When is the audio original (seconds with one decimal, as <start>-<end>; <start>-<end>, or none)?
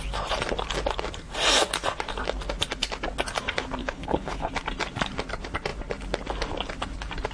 0.0-3.8; 4.5-7.3